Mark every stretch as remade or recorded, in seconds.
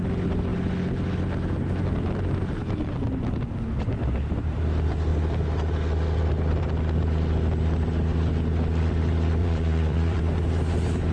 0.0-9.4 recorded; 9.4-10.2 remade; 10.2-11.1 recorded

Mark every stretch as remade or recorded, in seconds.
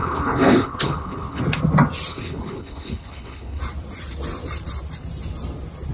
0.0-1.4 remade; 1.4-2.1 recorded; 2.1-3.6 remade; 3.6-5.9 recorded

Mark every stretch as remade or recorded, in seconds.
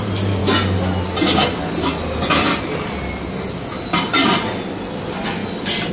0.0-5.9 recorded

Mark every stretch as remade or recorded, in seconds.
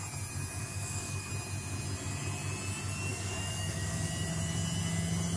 0.0-0.6 recorded; 0.6-1.3 remade; 1.3-3.1 recorded; 3.1-4.1 remade; 4.1-5.4 recorded